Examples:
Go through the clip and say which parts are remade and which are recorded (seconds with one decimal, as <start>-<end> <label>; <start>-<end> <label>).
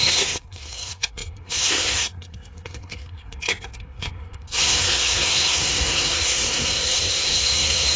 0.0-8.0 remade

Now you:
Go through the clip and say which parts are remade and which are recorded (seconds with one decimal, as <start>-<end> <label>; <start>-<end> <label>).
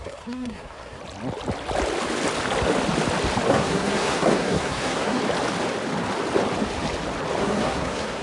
0.0-1.0 remade; 1.0-3.5 recorded; 3.5-5.2 remade; 5.2-7.4 recorded; 7.4-8.2 remade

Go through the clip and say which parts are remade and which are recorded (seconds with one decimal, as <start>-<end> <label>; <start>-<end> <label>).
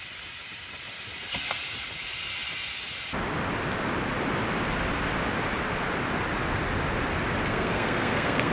0.0-7.5 recorded; 7.5-8.5 remade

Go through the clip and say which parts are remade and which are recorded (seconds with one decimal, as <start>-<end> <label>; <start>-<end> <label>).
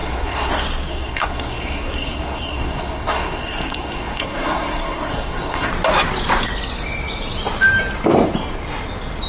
0.0-0.5 remade; 0.5-0.9 recorded; 0.9-5.7 remade; 5.7-9.3 recorded